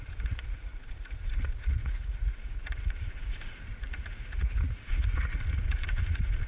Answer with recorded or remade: remade